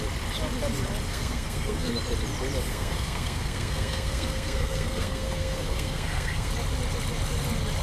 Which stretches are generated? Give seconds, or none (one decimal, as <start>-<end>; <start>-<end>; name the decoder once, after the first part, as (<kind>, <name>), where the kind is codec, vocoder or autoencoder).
1.1-1.9 (codec, SNAC); 2.7-6.5